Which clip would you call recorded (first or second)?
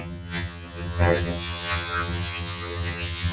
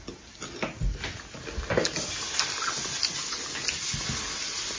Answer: second